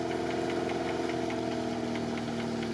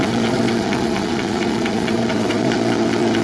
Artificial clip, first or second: second